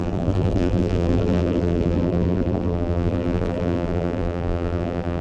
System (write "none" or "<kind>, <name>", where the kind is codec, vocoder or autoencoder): vocoder, BigVGAN v2